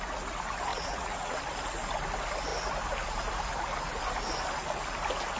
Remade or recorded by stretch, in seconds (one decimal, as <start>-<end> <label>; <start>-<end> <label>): 0.0-0.7 recorded; 0.7-1.4 remade; 1.4-5.4 recorded